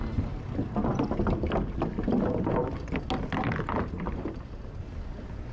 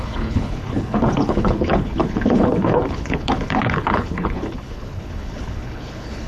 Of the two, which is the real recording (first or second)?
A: first